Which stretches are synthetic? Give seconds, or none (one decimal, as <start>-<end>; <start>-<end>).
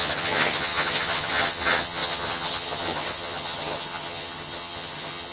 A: 0.0-5.3